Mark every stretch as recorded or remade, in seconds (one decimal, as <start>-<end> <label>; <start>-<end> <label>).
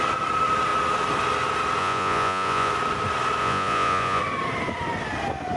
0.0-1.8 recorded; 1.8-2.7 remade; 2.7-3.4 recorded; 3.4-4.2 remade; 4.2-5.6 recorded